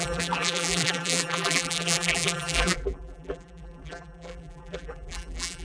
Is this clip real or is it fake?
fake